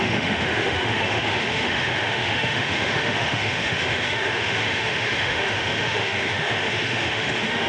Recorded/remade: remade